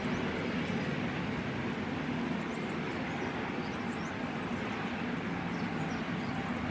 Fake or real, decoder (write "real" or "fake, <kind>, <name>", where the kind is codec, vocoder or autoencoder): real